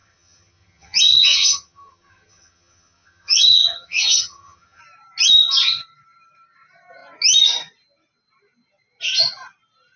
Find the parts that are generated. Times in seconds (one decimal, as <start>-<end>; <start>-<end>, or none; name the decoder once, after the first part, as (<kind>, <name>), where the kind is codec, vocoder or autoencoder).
0.0-4.8 (vocoder, HiFi-GAN)